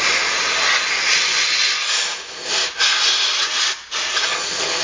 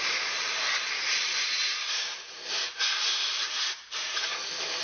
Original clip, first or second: first